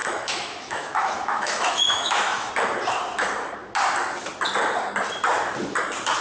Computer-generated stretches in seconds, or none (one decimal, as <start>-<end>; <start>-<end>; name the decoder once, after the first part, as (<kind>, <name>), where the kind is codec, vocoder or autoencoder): 0.0-2.5 (autoencoder, DAC-VAE)